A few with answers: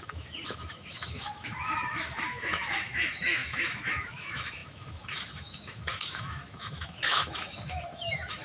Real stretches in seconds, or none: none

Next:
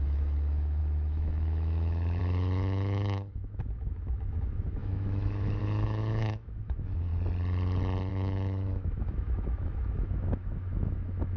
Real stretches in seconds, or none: 7.1-8.1

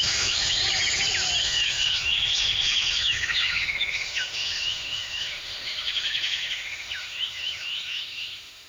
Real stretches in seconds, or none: 0.6-1.4

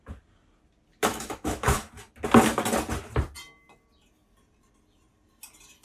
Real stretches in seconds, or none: 0.0-1.1; 1.9-5.8

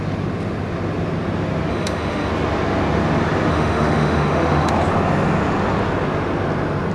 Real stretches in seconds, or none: 0.0-1.7; 2.3-3.5; 4.7-6.9

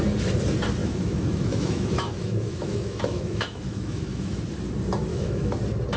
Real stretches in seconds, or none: 0.0-0.8; 4.4-5.1; 5.6-6.0

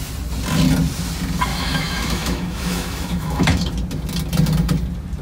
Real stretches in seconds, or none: 0.0-1.5; 3.6-5.2